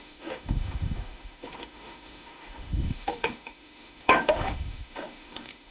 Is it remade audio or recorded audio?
remade